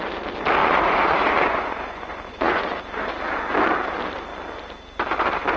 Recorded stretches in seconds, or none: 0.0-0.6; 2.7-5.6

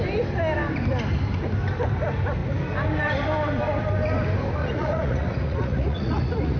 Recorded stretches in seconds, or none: 0.0-4.6

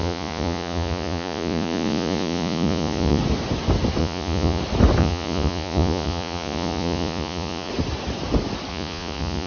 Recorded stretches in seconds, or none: 3.2-4.0; 4.6-5.0; 7.7-8.7

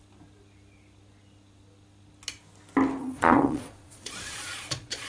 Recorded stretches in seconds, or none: 0.0-3.0

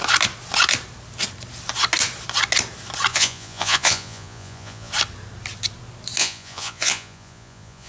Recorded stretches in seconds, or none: 0.0-3.1; 4.9-6.2

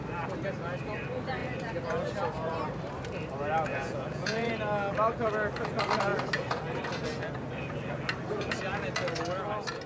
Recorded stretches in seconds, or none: 0.0-3.7; 4.5-9.9

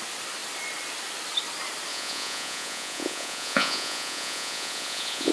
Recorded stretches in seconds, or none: 0.0-1.9

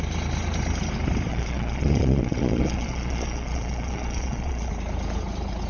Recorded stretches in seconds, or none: 0.0-1.3; 4.7-5.7